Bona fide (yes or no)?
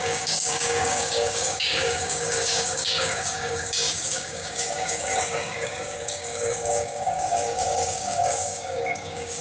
no